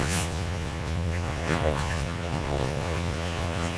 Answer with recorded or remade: remade